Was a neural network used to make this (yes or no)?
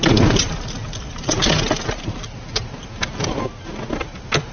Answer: no